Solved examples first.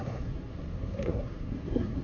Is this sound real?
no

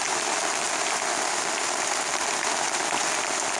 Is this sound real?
yes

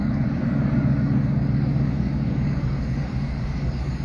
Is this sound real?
no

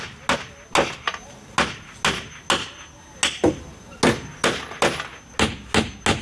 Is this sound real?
yes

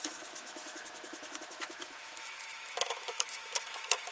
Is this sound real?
no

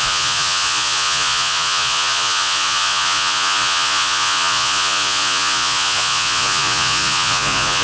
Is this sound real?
no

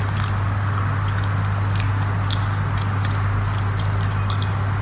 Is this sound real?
yes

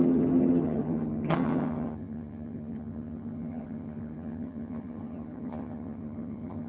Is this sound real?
no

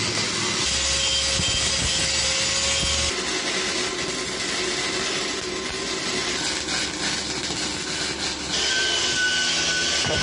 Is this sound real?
yes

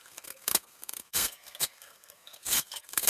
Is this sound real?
no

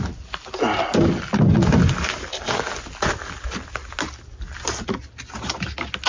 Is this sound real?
yes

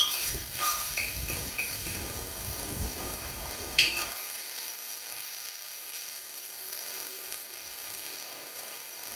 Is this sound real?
no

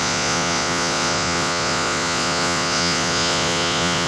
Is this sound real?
no